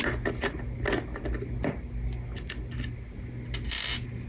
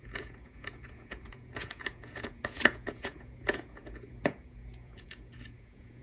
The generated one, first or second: second